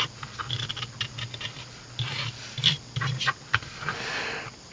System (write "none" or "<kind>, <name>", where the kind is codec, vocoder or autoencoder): none